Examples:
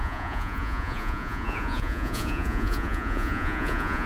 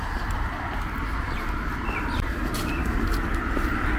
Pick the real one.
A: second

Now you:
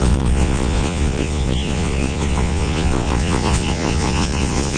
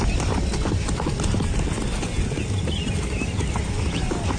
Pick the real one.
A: second